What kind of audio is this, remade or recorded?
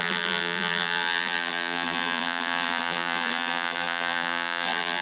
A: remade